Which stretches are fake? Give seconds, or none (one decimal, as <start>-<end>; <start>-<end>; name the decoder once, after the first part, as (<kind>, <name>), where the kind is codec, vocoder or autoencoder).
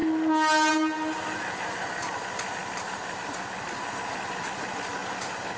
none